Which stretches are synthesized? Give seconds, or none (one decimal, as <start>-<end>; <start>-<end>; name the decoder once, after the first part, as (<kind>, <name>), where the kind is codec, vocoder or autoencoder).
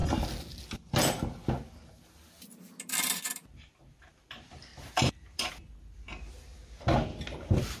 4.7-5.5 (vocoder, BigVGAN v2)